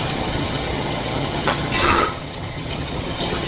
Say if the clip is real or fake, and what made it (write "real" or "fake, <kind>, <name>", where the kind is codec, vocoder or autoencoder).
fake, vocoder, HiFi-GAN